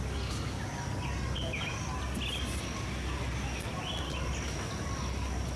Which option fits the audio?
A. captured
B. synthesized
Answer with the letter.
A